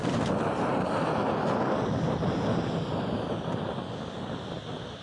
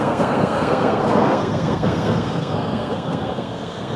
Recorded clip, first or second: first